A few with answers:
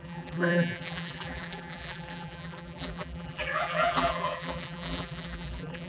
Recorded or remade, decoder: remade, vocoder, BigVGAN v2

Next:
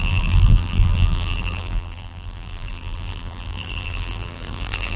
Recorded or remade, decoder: remade, vocoder, BigVGAN v2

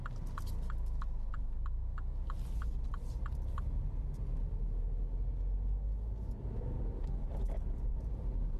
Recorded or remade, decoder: recorded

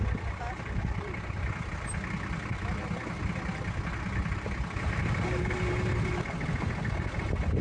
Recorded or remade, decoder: recorded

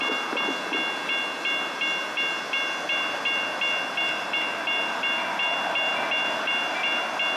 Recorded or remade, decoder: recorded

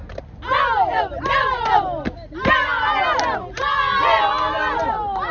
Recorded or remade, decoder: recorded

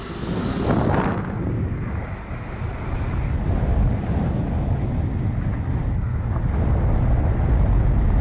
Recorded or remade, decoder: recorded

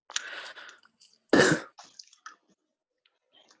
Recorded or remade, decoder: recorded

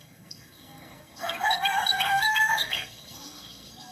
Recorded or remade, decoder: remade, codec, SNAC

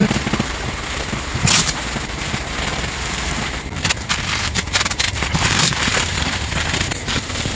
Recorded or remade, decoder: remade, vocoder, BigVGAN v2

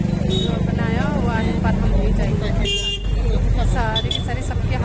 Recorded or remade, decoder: recorded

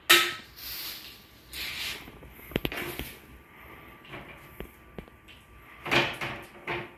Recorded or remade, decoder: recorded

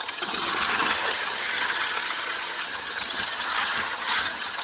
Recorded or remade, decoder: remade, vocoder, HiFi-GAN